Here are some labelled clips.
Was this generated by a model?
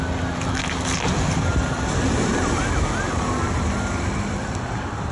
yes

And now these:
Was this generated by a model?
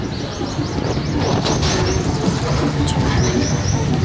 no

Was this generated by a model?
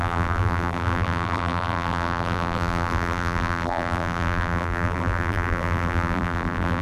yes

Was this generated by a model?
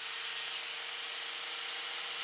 no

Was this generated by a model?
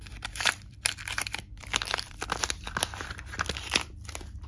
yes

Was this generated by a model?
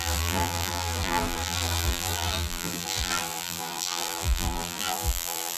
yes